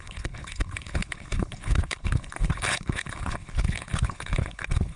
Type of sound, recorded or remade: remade